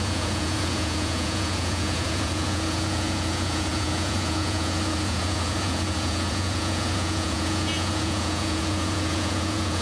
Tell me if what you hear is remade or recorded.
remade